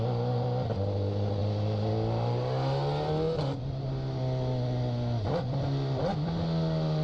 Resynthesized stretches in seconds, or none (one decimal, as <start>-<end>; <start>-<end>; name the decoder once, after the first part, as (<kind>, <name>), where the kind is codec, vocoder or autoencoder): none